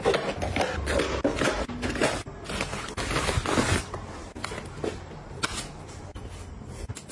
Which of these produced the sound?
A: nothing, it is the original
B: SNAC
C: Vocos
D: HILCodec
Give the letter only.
A